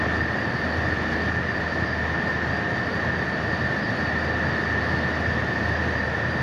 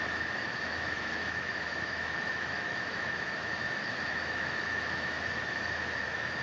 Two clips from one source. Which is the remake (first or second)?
second